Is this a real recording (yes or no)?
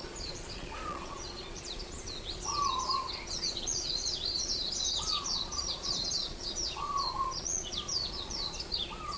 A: no